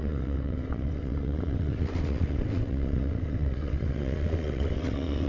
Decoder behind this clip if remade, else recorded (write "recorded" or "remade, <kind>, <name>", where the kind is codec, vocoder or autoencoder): remade, vocoder, WaveNeXt